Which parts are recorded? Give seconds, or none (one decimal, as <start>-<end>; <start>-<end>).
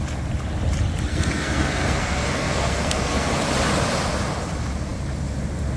0.0-1.1; 3.3-5.8